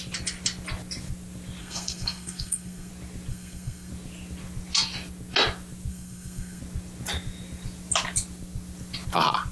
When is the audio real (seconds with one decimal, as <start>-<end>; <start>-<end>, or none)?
0.0-1.6; 2.9-3.3; 3.9-5.9; 6.6-9.5